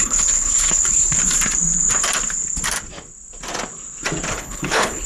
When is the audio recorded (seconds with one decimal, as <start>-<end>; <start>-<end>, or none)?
1.2-4.3